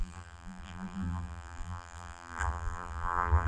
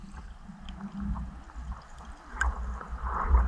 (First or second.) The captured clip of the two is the second